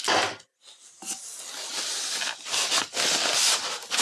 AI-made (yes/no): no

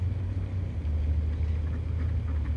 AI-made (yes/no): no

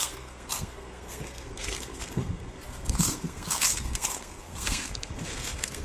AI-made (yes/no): yes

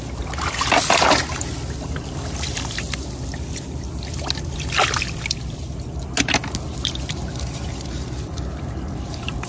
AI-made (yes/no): no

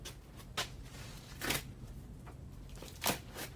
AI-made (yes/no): no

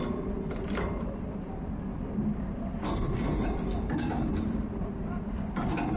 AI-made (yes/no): no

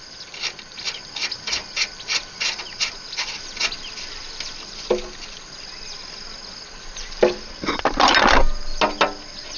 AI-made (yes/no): no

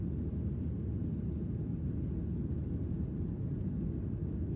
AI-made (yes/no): no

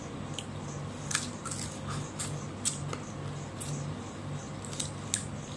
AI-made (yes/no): no